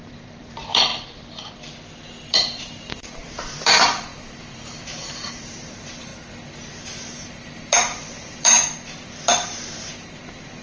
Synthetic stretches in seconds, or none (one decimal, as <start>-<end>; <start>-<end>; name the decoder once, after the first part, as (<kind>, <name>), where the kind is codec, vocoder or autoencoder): 0.0-0.9 (vocoder, BigVGAN v2); 2.3-6.1; 6.7-10.6